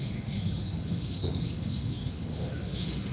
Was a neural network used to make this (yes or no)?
yes